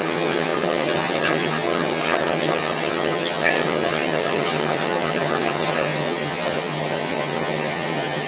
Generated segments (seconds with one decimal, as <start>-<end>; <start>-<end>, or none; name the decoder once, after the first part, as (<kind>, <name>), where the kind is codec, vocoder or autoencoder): 0.0-8.3 (vocoder, HiFi-GAN)